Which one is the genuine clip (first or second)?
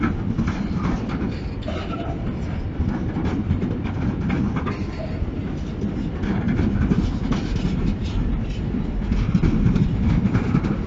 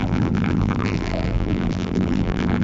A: first